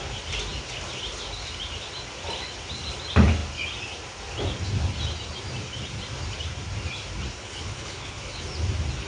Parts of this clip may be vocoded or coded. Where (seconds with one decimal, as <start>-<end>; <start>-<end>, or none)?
7.4-8.4